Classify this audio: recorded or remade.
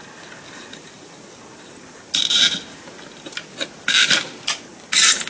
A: recorded